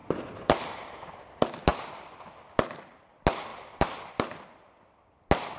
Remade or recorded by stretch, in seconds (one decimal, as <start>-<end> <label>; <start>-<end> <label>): 0.0-1.1 remade; 1.1-1.7 recorded; 1.7-2.2 remade; 2.2-3.5 recorded; 3.5-4.1 remade; 4.1-5.6 recorded